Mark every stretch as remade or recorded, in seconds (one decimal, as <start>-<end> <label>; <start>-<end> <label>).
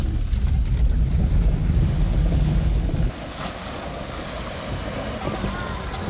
0.0-1.6 recorded; 1.6-4.2 remade; 4.2-6.1 recorded